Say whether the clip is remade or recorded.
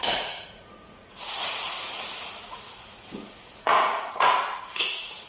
remade